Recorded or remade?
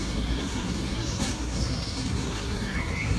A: remade